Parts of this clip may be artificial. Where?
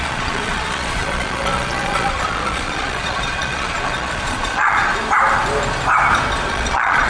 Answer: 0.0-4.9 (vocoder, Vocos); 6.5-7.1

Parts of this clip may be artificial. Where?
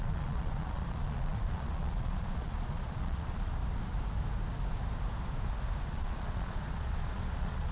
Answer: 0.0-3.6 (vocoder, Vocos); 5.8-7.7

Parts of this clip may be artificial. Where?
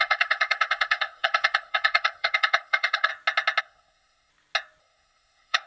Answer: 0.0-3.1 (codec, SNAC); 3.6-4.3; 4.8-5.7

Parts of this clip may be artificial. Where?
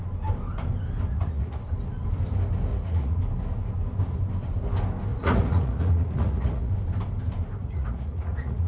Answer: 1.1-1.6 (vocoder, Vocos); 2.7-3.2; 5.1-6.7; 7.6-8.7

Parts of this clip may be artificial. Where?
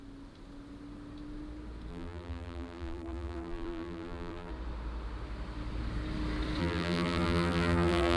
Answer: 1.9-4.5 (vocoder, BigVGAN v2); 6.6-8.2